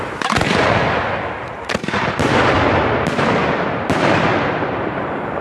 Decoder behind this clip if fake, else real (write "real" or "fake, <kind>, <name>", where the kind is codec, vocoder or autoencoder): real